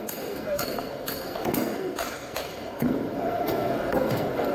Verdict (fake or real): fake